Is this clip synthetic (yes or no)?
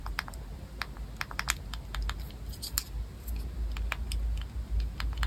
no